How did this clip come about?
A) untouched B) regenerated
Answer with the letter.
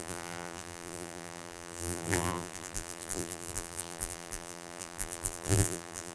B